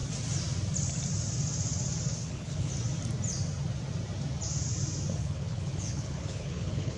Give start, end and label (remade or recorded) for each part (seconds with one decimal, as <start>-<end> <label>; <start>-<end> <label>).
0.0-2.1 recorded; 2.1-2.7 remade; 2.7-5.2 recorded; 5.2-7.0 remade